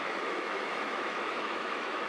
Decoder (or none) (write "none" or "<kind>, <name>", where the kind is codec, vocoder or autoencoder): autoencoder, DAC-VAE